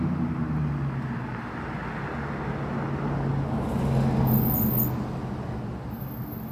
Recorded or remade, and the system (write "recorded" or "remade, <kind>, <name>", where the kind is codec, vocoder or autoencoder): recorded